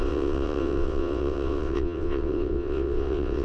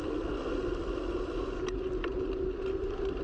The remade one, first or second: first